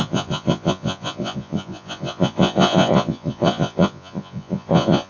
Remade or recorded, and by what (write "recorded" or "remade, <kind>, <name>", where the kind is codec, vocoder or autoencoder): remade, vocoder, Vocos